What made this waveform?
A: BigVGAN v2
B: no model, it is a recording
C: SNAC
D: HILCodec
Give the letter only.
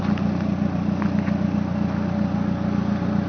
B